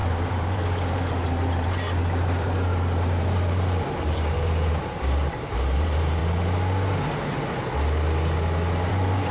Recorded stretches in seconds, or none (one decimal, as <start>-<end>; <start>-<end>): 6.2-8.9